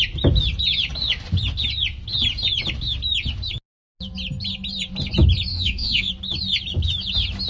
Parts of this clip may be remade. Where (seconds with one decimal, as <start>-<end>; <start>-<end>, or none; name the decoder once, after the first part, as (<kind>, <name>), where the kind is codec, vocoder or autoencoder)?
5.5-6.1 (autoencoder, DAC-VAE)